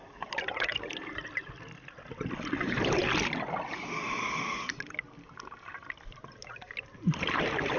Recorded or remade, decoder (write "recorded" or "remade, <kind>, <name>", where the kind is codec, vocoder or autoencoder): recorded